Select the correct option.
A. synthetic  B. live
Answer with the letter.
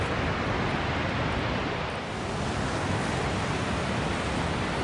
B